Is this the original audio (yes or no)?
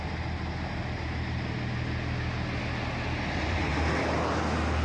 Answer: yes